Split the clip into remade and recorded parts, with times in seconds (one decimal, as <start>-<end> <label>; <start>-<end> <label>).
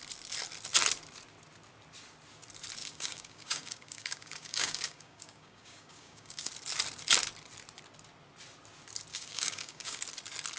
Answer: 0.0-2.8 recorded; 2.8-6.5 remade; 6.5-9.1 recorded; 9.1-10.0 remade; 10.0-10.6 recorded